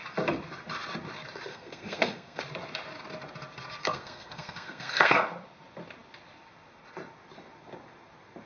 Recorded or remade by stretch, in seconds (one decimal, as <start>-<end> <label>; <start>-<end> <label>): 0.0-1.5 recorded; 1.5-2.4 remade; 2.4-3.8 recorded; 3.8-5.2 remade; 5.2-8.5 recorded